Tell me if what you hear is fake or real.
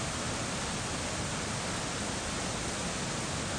real